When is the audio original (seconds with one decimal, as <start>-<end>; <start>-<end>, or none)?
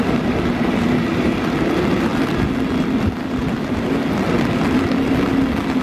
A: 0.0-5.8